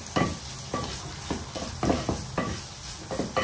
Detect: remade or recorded recorded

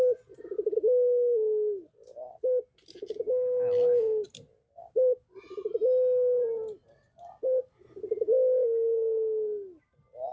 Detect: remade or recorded recorded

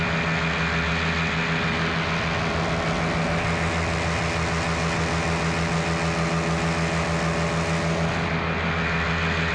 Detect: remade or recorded recorded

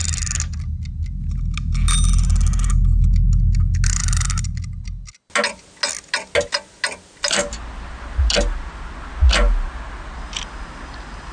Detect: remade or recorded recorded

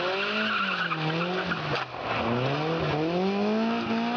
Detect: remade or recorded recorded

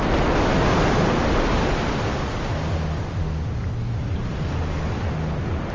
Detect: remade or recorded recorded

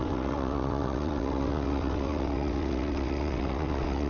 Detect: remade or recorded remade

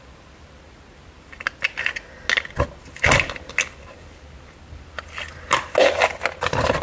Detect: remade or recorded recorded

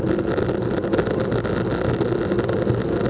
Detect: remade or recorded recorded